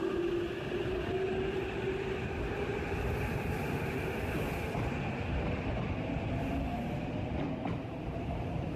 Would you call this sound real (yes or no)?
yes